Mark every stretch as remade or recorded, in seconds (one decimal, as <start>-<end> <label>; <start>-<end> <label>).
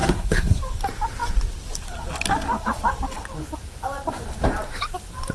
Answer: 0.0-0.6 remade; 0.6-5.3 recorded